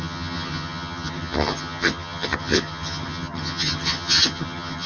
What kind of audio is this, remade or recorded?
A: remade